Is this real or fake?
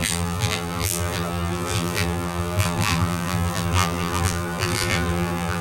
fake